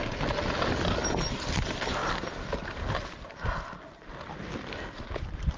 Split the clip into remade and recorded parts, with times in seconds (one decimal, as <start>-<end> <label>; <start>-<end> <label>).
0.0-5.6 recorded